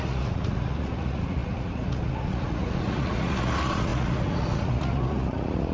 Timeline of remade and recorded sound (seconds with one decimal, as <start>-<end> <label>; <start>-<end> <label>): 0.0-5.7 remade